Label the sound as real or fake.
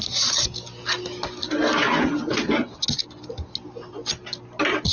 real